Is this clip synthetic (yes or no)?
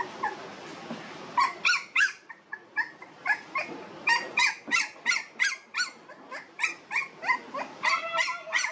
no